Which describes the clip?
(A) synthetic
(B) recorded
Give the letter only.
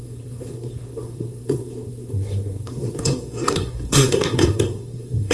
A